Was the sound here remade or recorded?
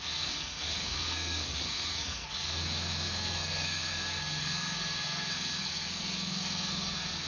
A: remade